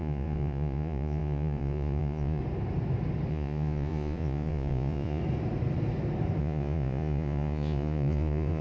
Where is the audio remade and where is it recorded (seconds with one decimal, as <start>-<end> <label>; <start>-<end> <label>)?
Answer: 0.0-2.4 remade; 2.4-3.3 recorded; 3.3-5.2 remade; 5.2-6.4 recorded; 6.4-8.6 remade